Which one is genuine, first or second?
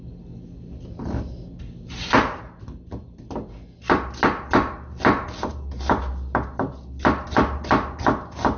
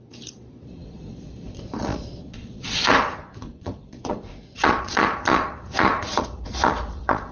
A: first